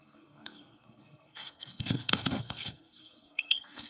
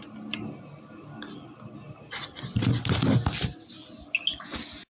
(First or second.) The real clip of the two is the second